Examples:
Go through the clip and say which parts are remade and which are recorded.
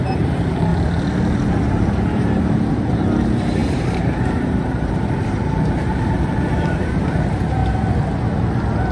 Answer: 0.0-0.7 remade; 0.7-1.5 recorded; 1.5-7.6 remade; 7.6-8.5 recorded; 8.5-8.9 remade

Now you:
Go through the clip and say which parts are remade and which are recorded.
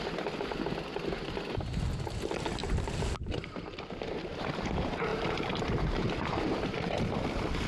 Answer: 0.0-2.6 recorded; 2.6-4.3 remade; 4.3-5.1 recorded; 5.1-6.9 remade; 6.9-7.7 recorded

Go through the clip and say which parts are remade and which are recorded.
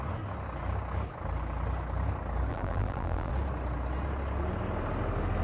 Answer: 0.0-2.5 recorded; 2.5-3.3 remade; 3.3-5.4 recorded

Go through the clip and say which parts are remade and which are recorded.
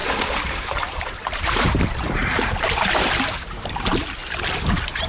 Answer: 0.0-4.2 remade; 4.2-5.1 recorded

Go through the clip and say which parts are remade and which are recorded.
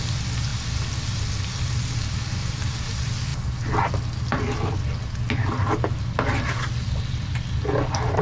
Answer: 0.0-8.2 recorded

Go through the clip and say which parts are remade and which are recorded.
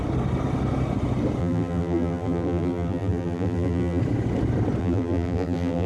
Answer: 0.0-1.4 recorded; 1.4-4.0 remade; 4.0-4.8 recorded; 4.8-5.9 remade